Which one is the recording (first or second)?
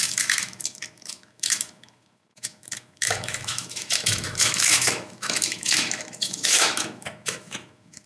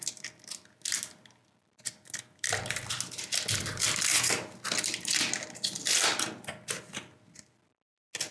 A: second